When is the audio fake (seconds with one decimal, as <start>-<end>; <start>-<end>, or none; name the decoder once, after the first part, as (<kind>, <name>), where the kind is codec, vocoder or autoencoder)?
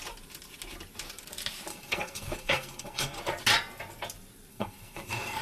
1.7-3.2 (codec, SNAC); 4.5-5.4